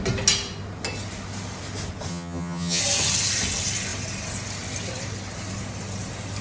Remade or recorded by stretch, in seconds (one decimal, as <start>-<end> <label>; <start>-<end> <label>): 0.0-2.1 recorded; 2.1-2.8 remade; 2.8-6.4 recorded